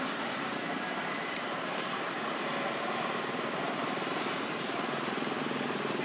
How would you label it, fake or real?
fake